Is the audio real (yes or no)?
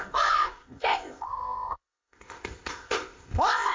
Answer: no